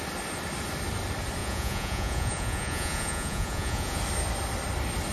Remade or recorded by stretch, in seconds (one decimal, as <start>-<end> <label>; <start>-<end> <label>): 0.0-1.4 recorded; 1.4-4.0 remade; 4.0-5.1 recorded